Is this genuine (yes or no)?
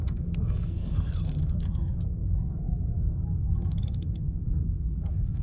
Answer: no